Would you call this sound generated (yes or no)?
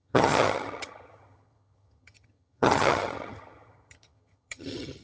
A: yes